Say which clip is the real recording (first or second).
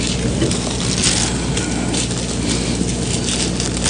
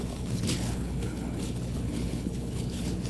first